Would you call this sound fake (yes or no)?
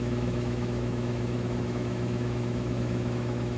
yes